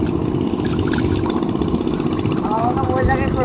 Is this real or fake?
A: real